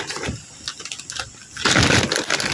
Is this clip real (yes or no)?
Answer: yes